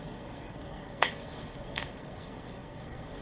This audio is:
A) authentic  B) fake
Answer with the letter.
B